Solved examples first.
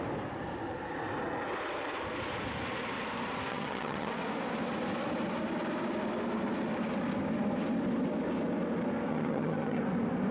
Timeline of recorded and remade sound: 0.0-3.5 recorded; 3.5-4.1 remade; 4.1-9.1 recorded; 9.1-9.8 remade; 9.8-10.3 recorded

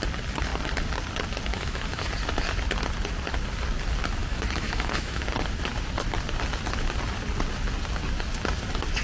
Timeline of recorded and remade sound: 0.0-1.5 recorded; 1.5-2.1 remade; 2.1-4.2 recorded; 4.2-5.2 remade; 5.2-9.0 recorded

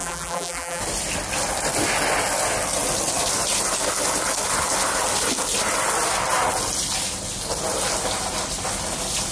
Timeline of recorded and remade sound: 0.0-0.8 remade; 0.8-9.3 recorded

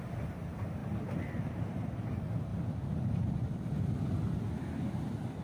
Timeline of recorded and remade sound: 0.0-2.5 recorded; 2.5-3.2 remade; 3.2-5.4 recorded

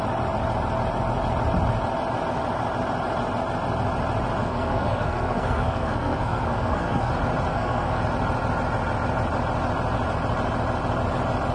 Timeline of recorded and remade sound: 0.0-4.4 recorded; 4.4-7.1 remade; 7.1-7.5 recorded; 7.5-8.0 remade; 8.0-11.5 recorded

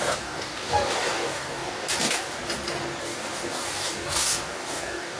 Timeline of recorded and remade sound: 0.0-2.4 remade; 2.4-3.0 recorded; 3.0-5.2 remade

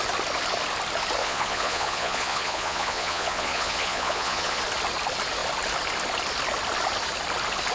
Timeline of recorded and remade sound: 0.0-1.2 recorded; 1.2-4.6 remade; 4.6-7.7 recorded